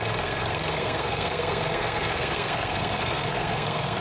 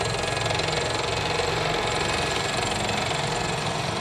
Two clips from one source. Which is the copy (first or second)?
first